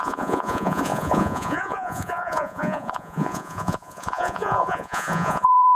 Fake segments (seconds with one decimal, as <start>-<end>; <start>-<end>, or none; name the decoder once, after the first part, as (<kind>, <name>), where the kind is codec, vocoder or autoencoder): 0.0-5.8 (vocoder, Vocos)